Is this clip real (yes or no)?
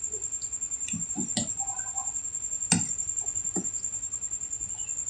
yes